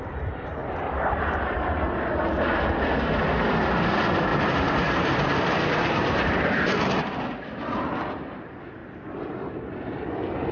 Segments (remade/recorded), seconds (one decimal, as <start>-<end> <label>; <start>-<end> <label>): 0.0-0.6 recorded; 0.6-1.5 remade; 1.5-4.3 recorded; 4.3-7.1 remade; 7.1-10.5 recorded